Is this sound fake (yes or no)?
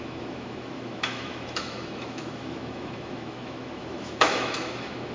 yes